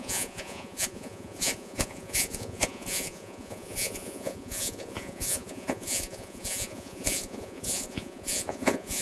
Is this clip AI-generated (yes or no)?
yes